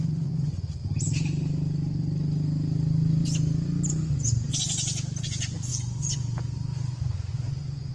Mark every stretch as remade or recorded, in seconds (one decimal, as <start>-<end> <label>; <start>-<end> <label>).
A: 0.0-0.8 remade; 0.8-3.9 recorded; 3.9-4.5 remade; 4.5-5.2 recorded; 5.2-7.9 remade